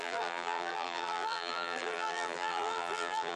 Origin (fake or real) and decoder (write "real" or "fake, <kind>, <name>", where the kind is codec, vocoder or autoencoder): fake, vocoder, BigVGAN v2